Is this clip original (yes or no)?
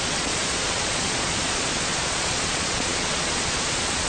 no